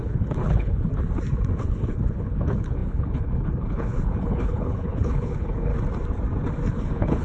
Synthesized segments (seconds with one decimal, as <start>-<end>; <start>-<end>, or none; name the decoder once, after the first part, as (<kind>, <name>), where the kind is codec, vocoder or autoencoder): 0.0-0.9 (codec, HILCodec); 1.6-5.7; 6.7-7.2